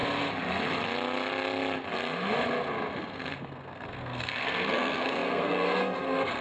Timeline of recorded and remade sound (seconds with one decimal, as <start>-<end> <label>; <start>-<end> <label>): 0.0-3.4 recorded; 3.4-6.4 remade